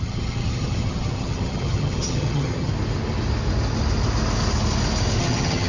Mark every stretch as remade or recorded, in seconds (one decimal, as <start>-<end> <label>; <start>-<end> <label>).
0.0-2.7 remade; 2.7-5.2 recorded; 5.2-5.7 remade